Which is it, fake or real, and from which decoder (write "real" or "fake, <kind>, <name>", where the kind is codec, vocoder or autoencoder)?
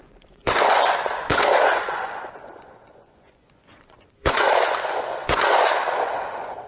fake, vocoder, Vocos